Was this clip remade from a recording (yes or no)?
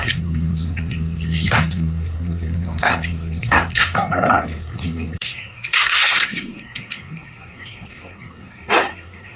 yes